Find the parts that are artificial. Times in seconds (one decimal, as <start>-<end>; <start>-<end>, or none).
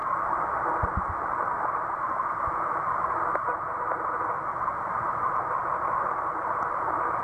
none